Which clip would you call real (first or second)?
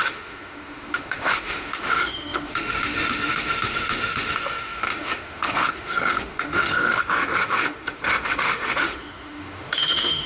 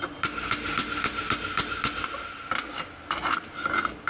second